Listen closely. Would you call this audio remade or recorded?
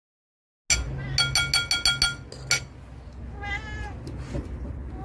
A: recorded